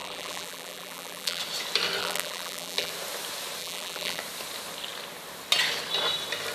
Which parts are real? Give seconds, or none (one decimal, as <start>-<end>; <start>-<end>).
1.4-2.0; 2.9-3.6; 4.2-6.5